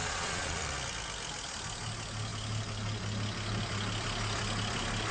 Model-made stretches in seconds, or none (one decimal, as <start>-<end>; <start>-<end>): 0.0-0.6